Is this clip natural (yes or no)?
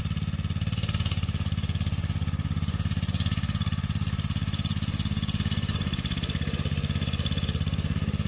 yes